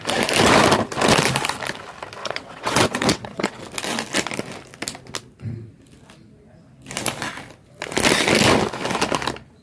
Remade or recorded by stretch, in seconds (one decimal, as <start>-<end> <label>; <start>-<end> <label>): 0.0-2.2 recorded; 2.2-3.6 remade; 3.6-9.6 recorded